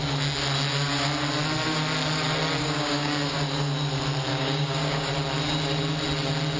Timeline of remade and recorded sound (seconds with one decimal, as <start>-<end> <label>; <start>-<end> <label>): 0.0-2.6 recorded; 2.6-3.4 remade; 3.4-4.3 recorded; 4.3-5.1 remade; 5.1-6.6 recorded